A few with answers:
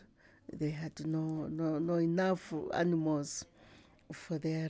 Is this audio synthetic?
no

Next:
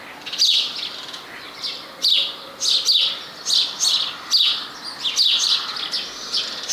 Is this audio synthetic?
no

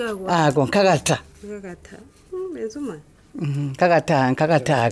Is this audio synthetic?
no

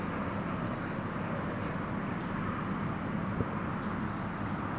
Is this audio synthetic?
no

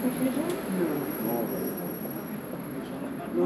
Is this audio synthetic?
no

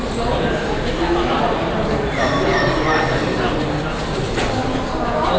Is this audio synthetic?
no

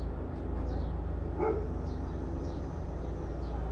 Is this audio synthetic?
no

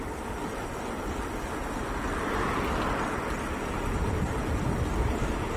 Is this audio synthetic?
no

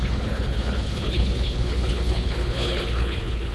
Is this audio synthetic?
yes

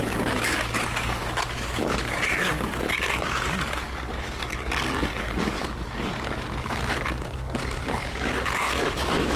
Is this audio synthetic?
yes